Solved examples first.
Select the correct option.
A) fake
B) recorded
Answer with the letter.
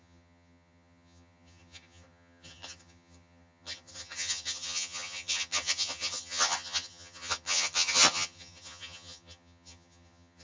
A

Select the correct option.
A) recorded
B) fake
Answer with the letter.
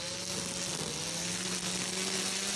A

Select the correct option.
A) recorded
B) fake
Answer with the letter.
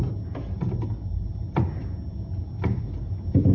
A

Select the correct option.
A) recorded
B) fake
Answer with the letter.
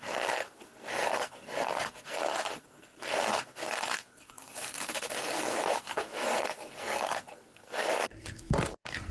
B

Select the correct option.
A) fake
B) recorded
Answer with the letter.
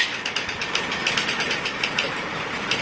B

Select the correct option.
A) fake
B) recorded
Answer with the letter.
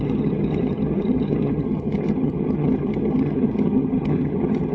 A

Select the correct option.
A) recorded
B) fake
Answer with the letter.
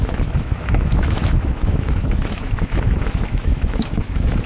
B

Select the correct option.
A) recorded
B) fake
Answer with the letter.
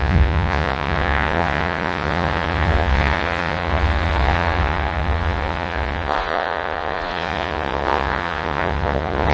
B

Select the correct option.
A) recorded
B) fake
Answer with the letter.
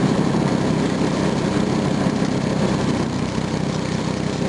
A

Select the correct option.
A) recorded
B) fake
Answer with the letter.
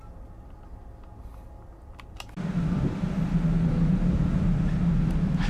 A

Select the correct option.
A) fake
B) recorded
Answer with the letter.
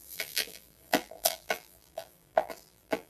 A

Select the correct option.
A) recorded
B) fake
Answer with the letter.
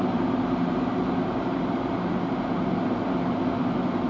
B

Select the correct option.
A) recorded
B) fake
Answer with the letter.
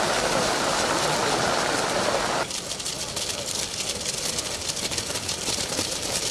A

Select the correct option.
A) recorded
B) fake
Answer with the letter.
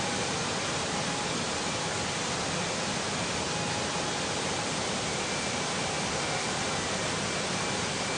A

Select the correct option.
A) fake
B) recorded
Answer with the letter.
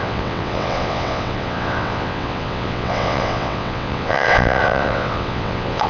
A